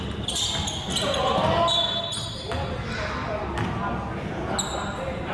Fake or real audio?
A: real